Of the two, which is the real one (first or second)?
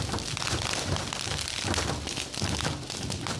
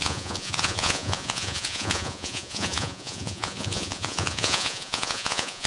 first